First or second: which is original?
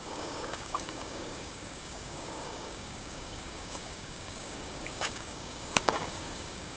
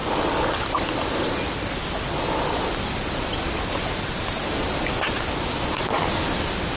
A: second